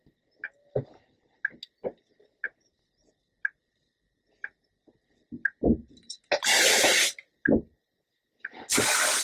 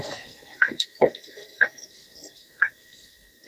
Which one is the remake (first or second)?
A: second